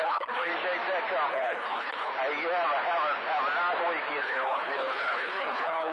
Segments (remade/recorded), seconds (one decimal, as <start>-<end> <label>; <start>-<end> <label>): 0.0-0.5 remade; 0.5-1.3 recorded; 1.3-2.1 remade; 2.1-4.2 recorded; 4.2-5.9 remade